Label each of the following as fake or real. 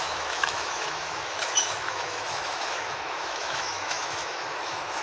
fake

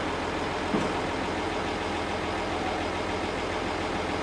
real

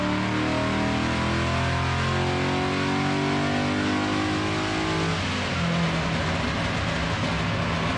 real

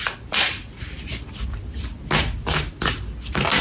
real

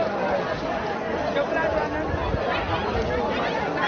real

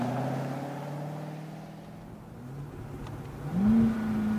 real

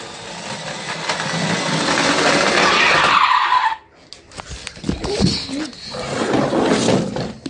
real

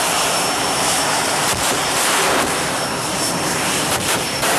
fake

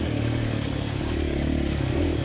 fake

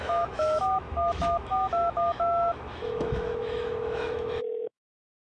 fake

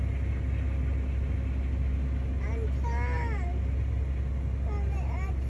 real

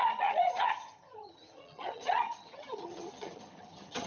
fake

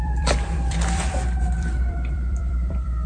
fake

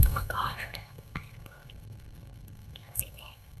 fake